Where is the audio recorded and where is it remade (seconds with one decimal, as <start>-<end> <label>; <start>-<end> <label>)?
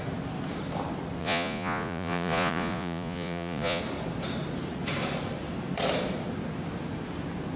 0.0-1.2 recorded; 1.2-3.8 remade; 3.8-7.6 recorded